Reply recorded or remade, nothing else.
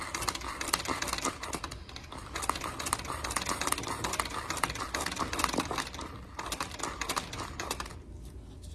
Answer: recorded